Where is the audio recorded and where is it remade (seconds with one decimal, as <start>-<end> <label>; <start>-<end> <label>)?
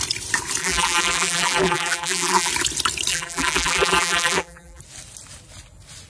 0.0-0.6 recorded; 0.6-2.5 remade; 2.5-3.1 recorded; 3.1-4.8 remade; 4.8-6.1 recorded